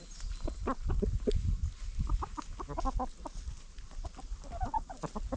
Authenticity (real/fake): real